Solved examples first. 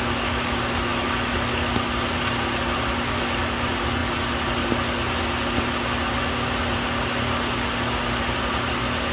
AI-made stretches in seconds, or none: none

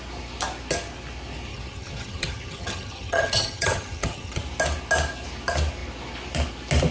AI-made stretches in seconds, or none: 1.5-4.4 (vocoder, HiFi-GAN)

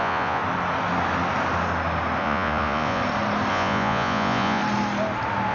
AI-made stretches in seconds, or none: 0.0-0.4 (vocoder, Vocos); 2.2-3.0; 3.5-4.6

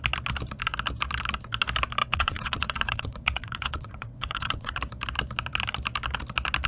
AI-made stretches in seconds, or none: 2.0-4.8 (vocoder, WaveNeXt)